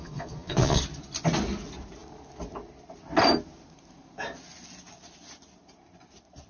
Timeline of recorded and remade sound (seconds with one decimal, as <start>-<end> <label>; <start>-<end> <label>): 0.0-0.8 remade; 0.8-6.5 recorded